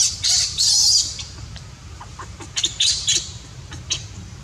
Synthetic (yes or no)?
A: no